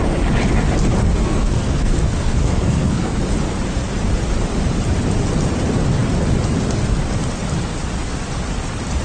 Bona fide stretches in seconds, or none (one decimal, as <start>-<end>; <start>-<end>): 0.0-1.0; 3.2-9.0

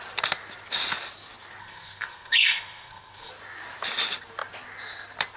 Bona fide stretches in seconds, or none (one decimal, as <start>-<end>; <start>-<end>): 0.0-1.6; 3.3-5.4

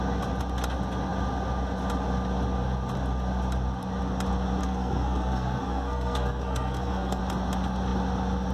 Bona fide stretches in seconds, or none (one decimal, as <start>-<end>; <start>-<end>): 0.0-4.6; 7.2-8.5

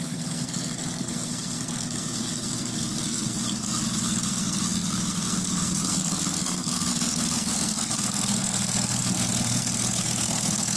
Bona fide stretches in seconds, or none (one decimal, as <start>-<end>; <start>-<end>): none

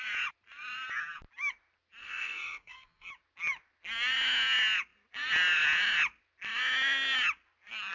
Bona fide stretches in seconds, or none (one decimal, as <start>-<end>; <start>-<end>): 0.0-2.0; 3.1-7.9

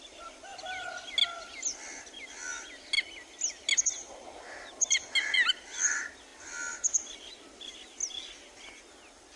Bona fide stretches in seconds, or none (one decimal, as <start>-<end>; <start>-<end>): 0.0-9.4

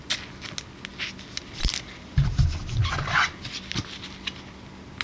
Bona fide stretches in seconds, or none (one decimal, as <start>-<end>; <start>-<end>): 0.0-5.0

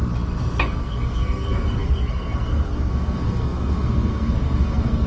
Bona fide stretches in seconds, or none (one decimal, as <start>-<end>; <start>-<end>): 0.0-0.6